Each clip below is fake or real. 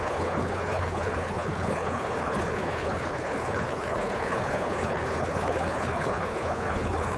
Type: fake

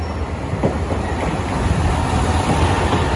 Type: real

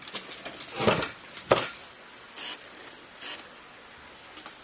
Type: real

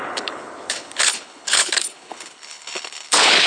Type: fake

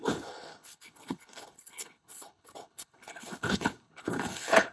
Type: fake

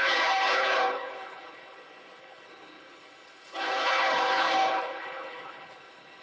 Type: fake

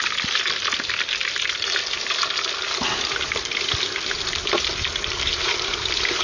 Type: real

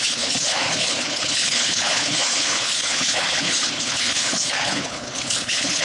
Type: fake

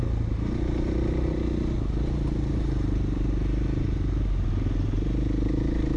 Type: real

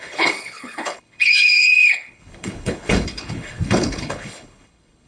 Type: fake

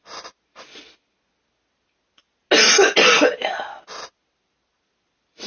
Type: real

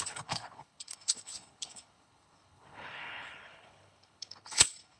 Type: fake